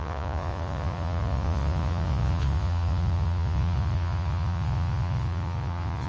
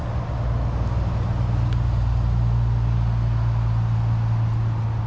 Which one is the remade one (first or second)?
first